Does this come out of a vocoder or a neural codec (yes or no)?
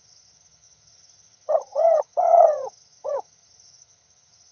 yes